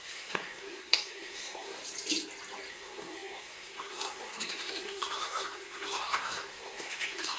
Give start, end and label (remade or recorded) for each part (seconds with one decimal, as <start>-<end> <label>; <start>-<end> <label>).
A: 0.0-1.8 remade; 1.8-2.7 recorded; 2.7-7.4 remade